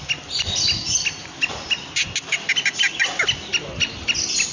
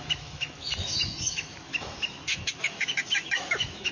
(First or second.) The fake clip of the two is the second